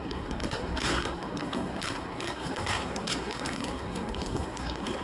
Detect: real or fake fake